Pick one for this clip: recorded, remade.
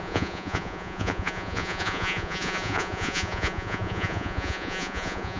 remade